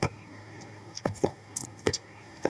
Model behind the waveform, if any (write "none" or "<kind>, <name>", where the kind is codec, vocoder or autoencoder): codec, SNAC